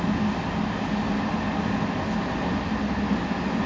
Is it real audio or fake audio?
real